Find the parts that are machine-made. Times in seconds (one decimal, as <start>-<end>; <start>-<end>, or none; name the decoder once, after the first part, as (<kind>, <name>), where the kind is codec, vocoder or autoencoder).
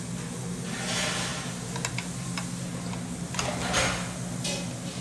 none